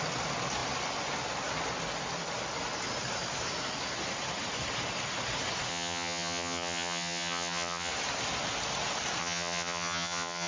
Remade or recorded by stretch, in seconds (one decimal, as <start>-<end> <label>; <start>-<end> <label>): 0.0-5.7 recorded; 5.7-7.9 remade; 7.9-9.2 recorded; 9.2-10.5 remade